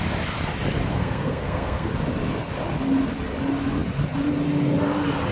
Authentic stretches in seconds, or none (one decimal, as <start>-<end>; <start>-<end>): 0.0-0.9; 1.9-5.3